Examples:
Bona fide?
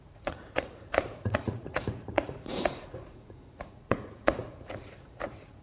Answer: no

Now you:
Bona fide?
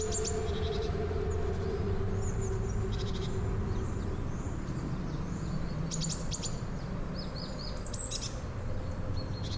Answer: yes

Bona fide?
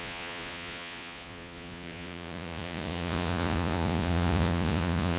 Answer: no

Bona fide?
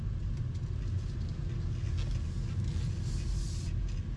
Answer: yes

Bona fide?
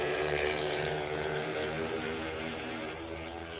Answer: no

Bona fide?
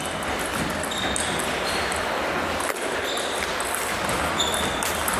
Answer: yes